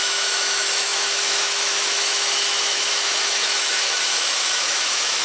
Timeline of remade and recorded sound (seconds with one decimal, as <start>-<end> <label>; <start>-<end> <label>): 0.0-5.2 remade